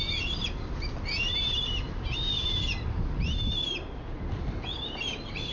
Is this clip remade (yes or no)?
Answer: no